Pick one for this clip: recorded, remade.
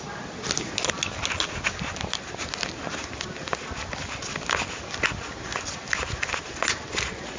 recorded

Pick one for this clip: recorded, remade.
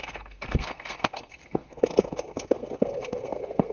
remade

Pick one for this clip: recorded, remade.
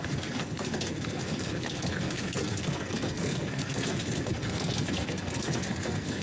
remade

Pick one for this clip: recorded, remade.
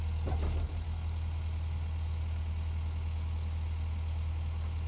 recorded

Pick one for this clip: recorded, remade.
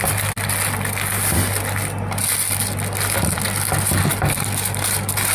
recorded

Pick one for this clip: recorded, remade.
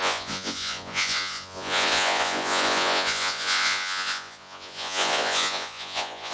remade